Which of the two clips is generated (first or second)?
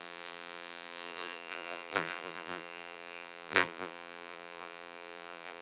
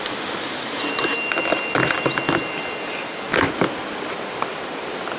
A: first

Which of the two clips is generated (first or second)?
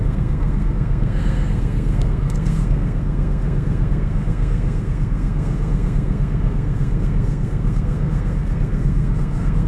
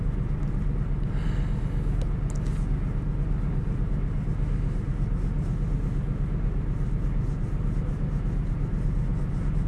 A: first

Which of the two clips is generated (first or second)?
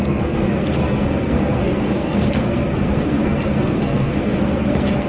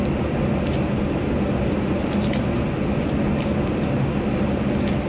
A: first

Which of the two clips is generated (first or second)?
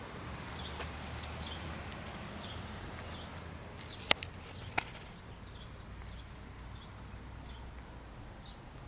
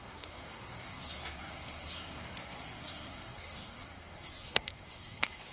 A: second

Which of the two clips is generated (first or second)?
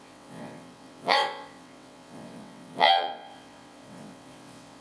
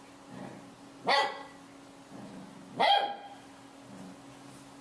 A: first